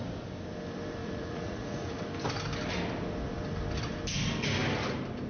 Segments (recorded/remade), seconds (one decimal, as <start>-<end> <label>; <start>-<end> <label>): 0.0-1.0 recorded; 1.0-2.0 remade; 2.0-5.3 recorded